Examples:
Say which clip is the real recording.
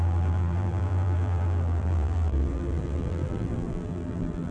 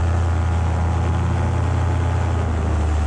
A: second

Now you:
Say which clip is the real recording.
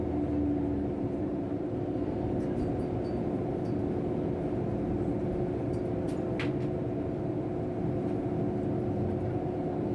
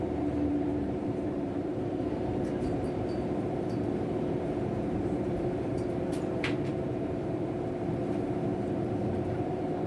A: first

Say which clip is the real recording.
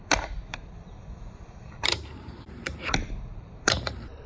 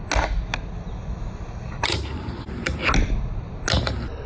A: second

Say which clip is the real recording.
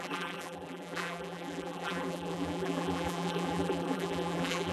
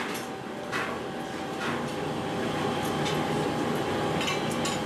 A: second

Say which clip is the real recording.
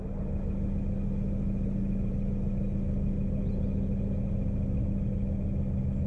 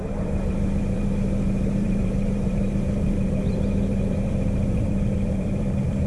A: first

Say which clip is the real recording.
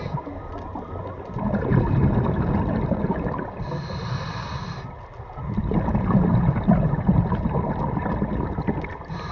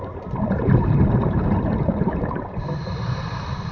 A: first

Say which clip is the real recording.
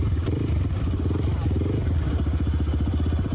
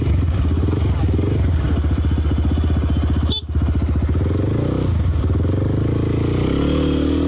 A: second